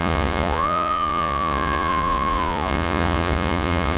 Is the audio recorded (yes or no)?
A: no